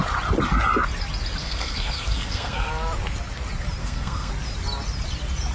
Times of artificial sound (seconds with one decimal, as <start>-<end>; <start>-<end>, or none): 1.4-2.7; 3.8-4.3